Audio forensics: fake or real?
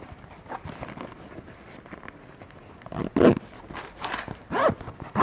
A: real